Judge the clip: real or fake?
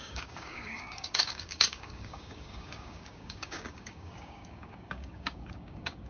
fake